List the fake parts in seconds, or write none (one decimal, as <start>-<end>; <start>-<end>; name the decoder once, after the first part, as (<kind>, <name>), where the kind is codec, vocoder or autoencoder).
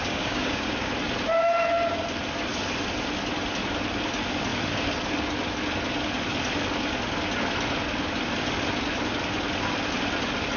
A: 0.0-0.9 (codec, DAC)